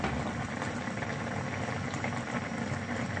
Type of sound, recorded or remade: recorded